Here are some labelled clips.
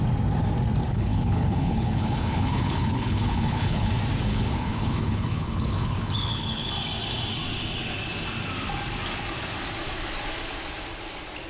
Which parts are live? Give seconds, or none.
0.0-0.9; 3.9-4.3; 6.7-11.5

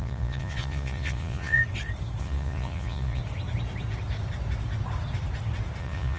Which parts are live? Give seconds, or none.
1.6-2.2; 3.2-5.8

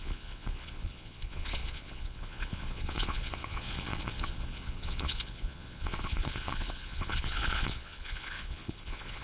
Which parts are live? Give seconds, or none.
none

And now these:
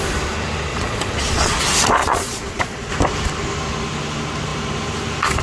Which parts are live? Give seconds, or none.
0.0-0.7; 1.6-2.0; 2.9-5.4